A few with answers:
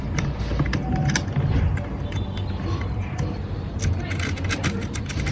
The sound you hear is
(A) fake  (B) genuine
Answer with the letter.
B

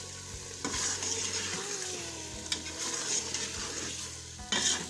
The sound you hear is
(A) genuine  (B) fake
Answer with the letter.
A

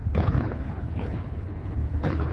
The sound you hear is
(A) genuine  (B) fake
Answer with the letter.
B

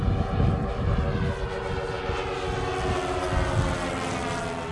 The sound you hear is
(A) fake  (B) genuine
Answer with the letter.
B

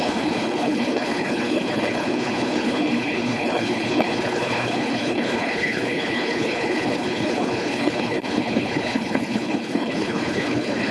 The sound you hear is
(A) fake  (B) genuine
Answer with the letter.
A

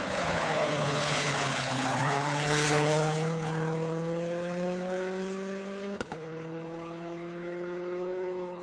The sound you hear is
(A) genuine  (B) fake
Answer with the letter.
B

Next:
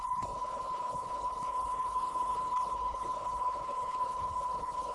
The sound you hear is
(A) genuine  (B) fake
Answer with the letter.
B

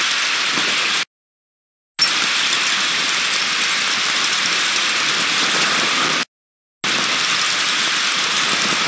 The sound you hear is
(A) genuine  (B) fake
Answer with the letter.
A